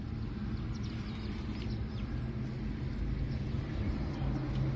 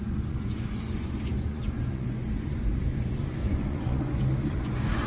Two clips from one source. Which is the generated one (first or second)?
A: second